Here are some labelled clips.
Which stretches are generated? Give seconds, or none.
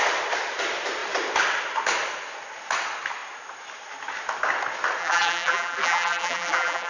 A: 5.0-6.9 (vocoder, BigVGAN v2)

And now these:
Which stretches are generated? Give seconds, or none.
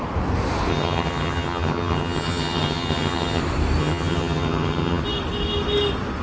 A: 0.7-3.4 (vocoder, HiFi-GAN); 3.8-5.0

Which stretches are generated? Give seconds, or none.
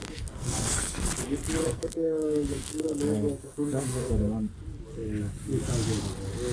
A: 0.0-1.1 (codec, SNAC); 1.6-4.1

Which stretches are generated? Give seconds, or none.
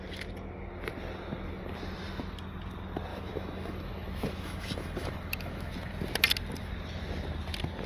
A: 3.1-5.7 (autoencoder, DAC-VAE)